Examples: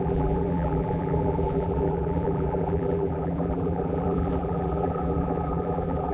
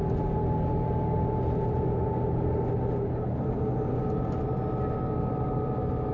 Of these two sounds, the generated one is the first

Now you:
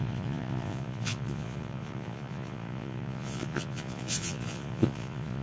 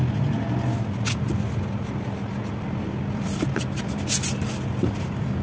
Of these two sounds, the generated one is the first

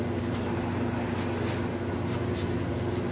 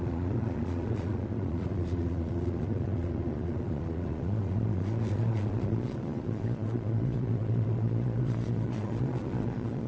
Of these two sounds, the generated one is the second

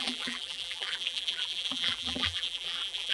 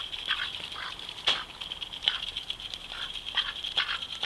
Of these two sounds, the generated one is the first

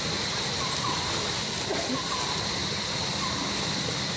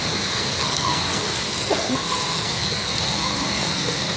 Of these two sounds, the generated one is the second